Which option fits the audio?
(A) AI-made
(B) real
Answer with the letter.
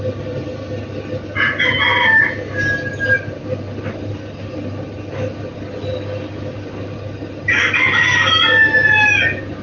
B